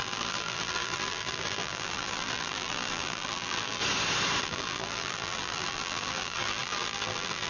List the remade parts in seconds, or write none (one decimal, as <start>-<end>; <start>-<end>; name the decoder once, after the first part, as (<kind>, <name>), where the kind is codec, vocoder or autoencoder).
0.0-3.8 (vocoder, BigVGAN v2); 4.4-7.5